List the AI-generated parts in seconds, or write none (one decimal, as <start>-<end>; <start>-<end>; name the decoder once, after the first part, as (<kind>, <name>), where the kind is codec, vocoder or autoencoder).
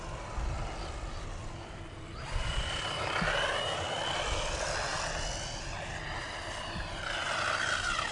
none